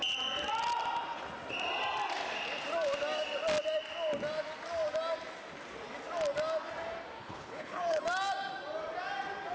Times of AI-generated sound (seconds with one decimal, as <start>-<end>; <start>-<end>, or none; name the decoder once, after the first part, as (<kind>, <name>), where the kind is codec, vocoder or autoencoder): 7.2-8.0 (codec, HILCodec)